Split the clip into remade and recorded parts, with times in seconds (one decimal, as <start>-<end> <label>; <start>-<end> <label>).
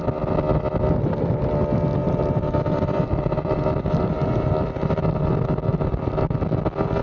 0.0-2.0 recorded; 2.0-5.0 remade; 5.0-5.7 recorded; 5.7-6.2 remade; 6.2-7.0 recorded